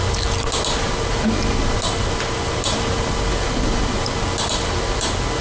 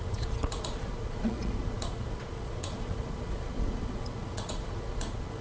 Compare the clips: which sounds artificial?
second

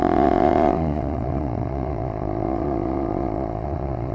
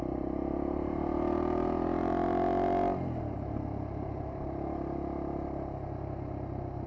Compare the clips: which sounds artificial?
first